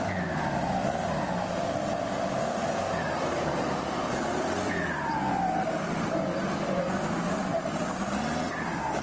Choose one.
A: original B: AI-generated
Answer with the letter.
A